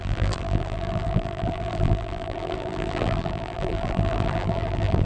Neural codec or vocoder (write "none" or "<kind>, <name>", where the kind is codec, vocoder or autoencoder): vocoder, BigVGAN v2